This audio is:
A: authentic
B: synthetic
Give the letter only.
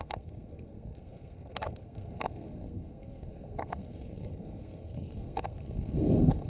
B